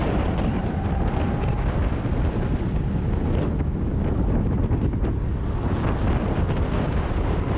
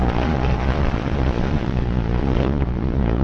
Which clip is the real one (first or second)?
first